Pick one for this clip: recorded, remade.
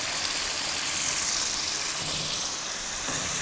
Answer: remade